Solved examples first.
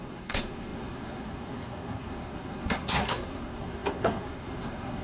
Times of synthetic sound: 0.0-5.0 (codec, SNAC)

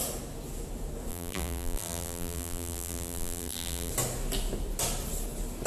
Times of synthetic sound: 1.1-3.9 (vocoder, BigVGAN v2)

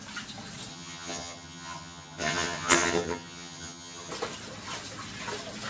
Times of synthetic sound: 0.7-4.1 (vocoder, HiFi-GAN)